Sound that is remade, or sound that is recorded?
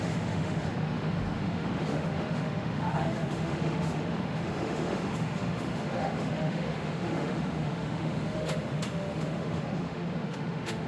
remade